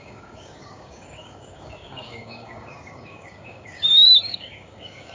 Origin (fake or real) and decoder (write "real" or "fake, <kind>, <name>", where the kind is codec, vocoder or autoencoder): fake, codec, DAC